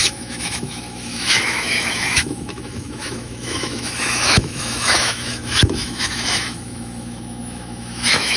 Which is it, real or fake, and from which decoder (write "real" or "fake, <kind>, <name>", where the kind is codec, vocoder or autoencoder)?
fake, autoencoder, DAC-VAE